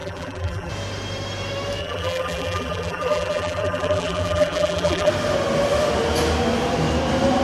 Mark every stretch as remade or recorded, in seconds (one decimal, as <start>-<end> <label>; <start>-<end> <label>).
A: 0.0-0.7 remade; 0.7-1.8 recorded; 1.8-5.1 remade; 5.1-7.4 recorded